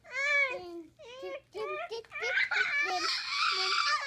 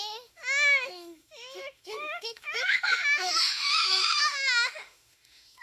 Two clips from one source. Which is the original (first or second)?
first